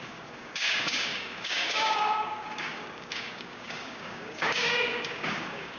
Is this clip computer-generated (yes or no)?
yes